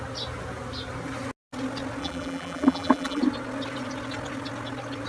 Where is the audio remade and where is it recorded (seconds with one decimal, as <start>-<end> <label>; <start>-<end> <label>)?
0.0-2.0 recorded; 2.0-3.2 remade; 3.2-5.1 recorded